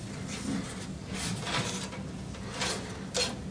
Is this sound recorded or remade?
recorded